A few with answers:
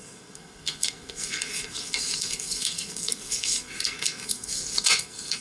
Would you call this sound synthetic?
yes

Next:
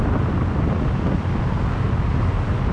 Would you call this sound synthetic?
no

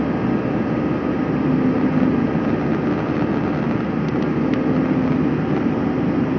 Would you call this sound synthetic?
no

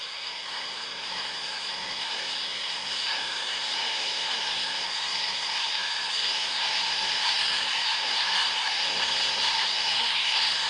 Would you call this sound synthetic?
yes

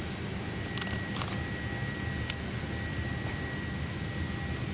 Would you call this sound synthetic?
no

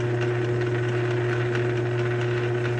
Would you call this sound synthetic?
no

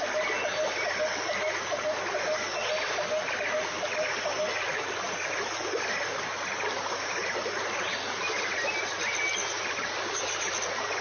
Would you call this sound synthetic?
no